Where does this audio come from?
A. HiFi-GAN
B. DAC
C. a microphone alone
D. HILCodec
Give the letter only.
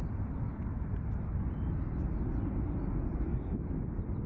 C